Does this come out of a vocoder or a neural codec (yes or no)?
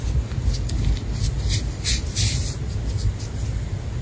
no